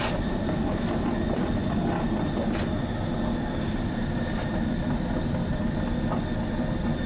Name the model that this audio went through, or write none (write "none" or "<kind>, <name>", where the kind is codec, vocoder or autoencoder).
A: none